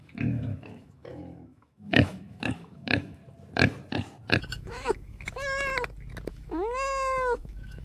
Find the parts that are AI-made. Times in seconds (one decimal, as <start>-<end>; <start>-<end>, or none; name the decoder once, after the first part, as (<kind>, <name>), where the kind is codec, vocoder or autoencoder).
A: 0.0-3.2 (autoencoder, DAC-VAE); 4.4-5.7; 6.3-7.8